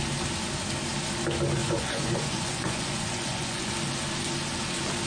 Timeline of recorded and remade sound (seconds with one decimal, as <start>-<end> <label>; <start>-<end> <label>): 0.0-1.6 recorded; 1.6-3.7 remade; 3.7-5.1 recorded

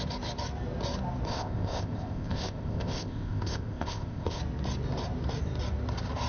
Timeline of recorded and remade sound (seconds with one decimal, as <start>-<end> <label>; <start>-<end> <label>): 0.0-1.3 recorded; 1.3-4.4 remade; 4.4-6.3 recorded